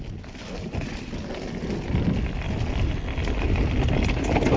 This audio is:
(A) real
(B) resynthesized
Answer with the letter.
A